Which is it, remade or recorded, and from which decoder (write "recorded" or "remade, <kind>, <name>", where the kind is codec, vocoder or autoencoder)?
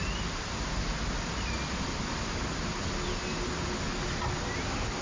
recorded